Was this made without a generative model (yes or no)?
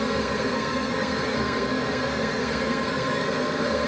no